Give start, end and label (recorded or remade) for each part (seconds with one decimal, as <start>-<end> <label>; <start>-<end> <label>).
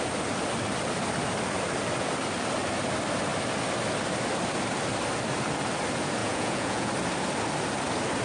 0.0-6.2 recorded; 6.2-6.9 remade; 6.9-8.2 recorded